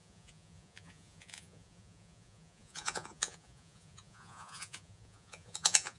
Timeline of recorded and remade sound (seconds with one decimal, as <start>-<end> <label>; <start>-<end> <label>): 0.0-6.0 remade